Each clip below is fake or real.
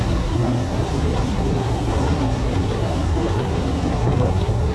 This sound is fake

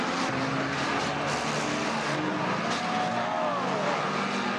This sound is real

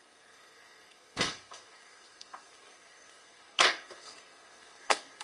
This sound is fake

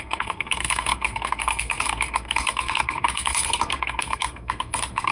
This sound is fake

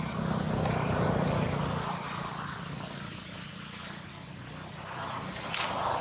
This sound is real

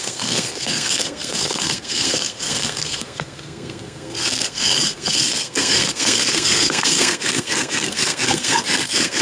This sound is fake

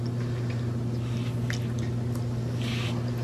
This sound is real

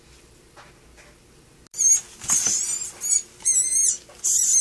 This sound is real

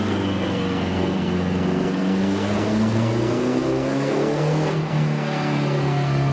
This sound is fake